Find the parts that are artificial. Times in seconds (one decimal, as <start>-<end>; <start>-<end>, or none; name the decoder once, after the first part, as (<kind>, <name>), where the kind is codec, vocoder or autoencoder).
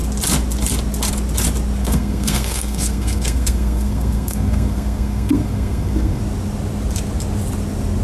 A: 1.8-6.2 (codec, SNAC)